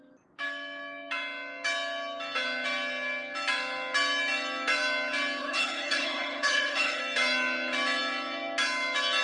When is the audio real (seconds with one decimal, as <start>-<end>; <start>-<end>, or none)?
0.0-5.4; 7.0-9.2

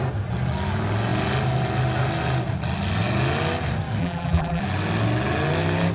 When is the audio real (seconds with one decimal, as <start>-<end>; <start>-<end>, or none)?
0.0-4.0; 4.6-5.9

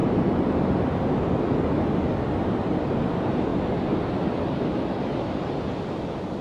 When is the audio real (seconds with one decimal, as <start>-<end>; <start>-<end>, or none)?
0.0-6.4

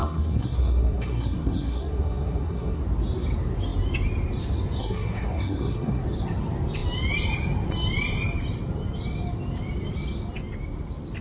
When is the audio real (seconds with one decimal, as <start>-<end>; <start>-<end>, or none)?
2.8-4.8; 6.0-11.2

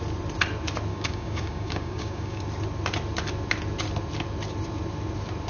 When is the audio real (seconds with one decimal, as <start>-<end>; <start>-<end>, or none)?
0.0-0.9; 2.4-5.5

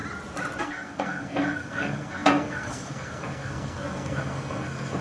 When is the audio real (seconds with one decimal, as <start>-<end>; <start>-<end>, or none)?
0.0-0.6

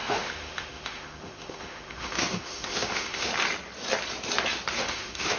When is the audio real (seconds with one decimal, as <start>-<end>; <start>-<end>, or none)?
3.3-4.8

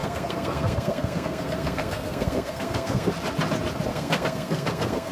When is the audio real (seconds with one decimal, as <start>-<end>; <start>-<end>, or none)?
3.1-3.9